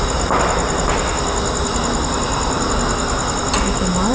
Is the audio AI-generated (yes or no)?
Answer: no